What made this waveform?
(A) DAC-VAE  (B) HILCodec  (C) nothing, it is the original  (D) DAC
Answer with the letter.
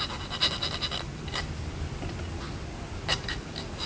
C